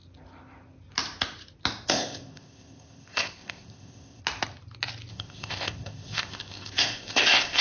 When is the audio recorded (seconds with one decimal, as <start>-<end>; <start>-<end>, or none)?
0.0-1.9; 4.2-5.1